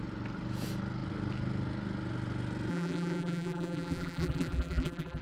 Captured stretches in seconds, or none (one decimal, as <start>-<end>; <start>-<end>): 0.0-2.7